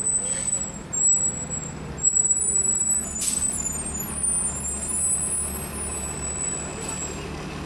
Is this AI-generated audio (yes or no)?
no